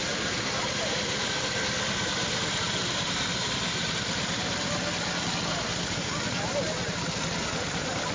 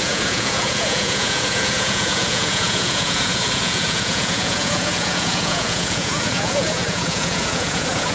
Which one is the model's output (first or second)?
second